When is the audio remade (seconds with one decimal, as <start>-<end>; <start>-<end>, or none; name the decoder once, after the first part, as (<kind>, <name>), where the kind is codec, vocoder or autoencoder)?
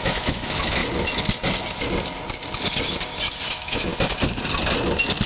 0.0-0.8 (autoencoder, DAC-VAE); 3.5-3.9